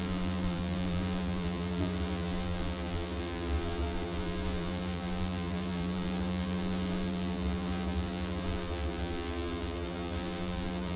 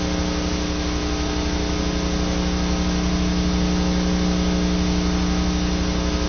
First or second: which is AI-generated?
first